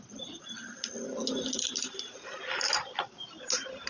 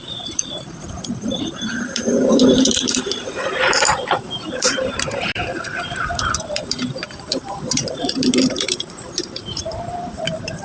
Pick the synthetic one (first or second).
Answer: second